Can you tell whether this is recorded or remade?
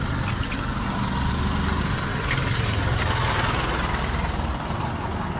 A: recorded